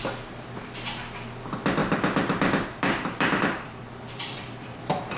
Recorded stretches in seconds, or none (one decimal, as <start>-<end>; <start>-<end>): 0.0-1.8